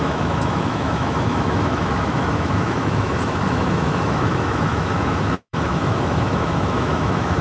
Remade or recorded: remade